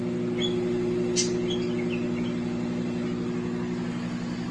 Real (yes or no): yes